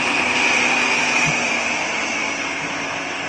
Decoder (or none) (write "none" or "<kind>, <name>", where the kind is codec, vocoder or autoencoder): none